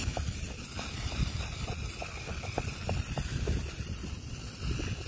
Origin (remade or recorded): recorded